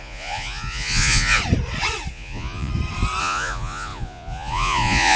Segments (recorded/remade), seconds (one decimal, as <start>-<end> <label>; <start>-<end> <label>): 0.0-1.4 remade; 1.4-2.1 recorded; 2.1-2.7 remade; 2.7-3.2 recorded; 3.2-5.2 remade